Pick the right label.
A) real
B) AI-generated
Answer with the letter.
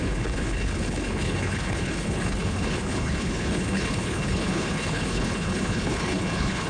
B